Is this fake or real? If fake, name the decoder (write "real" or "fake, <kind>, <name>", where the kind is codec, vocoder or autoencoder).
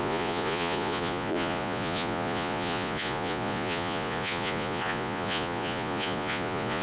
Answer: fake, vocoder, Vocos